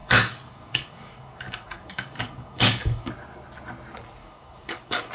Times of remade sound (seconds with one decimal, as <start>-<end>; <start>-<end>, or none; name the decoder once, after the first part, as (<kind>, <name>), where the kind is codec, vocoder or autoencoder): 0.0-3.1 (codec, DAC); 4.2-5.1